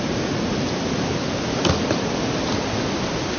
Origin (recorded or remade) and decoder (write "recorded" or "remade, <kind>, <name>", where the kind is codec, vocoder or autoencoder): recorded